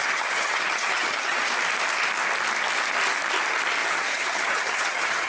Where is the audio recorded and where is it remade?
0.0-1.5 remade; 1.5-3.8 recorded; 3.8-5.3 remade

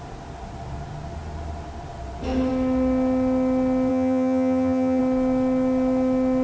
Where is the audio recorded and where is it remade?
0.0-3.9 recorded; 3.9-5.0 remade; 5.0-6.4 recorded

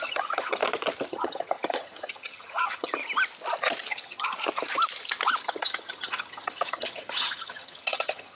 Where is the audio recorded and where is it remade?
0.0-0.6 remade; 0.6-1.1 recorded; 1.1-3.0 remade; 3.0-3.9 recorded; 3.9-4.3 remade; 4.3-5.4 recorded; 5.4-8.3 remade